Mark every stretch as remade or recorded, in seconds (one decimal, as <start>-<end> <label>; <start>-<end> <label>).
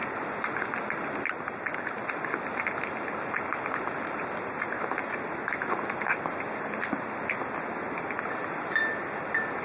0.0-9.6 recorded